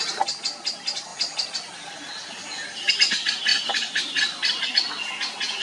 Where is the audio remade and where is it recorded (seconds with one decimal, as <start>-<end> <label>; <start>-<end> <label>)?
0.0-3.5 recorded; 3.5-4.6 remade; 4.6-5.6 recorded